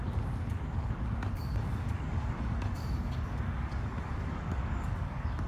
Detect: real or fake fake